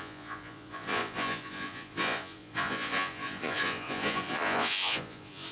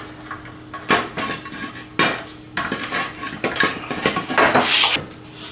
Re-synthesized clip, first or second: first